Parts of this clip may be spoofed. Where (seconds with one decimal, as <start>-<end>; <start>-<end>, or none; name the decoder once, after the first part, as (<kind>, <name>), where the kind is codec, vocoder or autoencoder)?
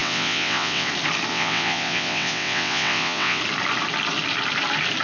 0.0-0.9 (vocoder, WaveNeXt); 1.3-3.4